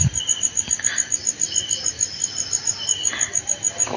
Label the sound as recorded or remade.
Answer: recorded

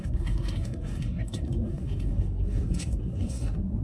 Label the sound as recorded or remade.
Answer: remade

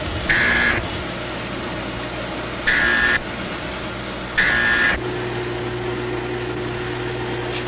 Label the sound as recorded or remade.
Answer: recorded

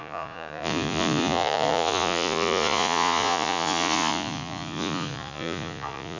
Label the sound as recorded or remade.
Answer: remade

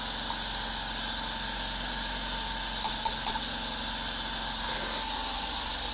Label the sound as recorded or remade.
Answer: recorded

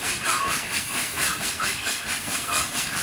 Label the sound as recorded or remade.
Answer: remade